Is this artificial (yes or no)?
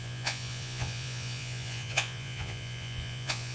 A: yes